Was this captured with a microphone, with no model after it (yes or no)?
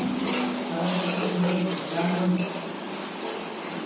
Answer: yes